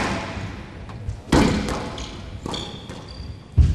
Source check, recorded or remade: recorded